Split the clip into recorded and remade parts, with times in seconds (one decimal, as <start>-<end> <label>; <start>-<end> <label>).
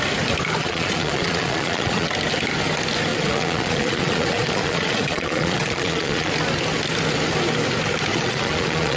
0.0-0.6 recorded; 0.6-2.1 remade; 2.1-3.1 recorded; 3.1-6.3 remade; 6.3-8.1 recorded; 8.1-9.0 remade